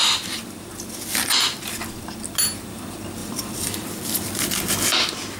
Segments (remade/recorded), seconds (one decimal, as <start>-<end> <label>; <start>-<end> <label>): 0.0-0.9 remade; 0.9-3.2 recorded; 3.2-4.2 remade; 4.2-5.4 recorded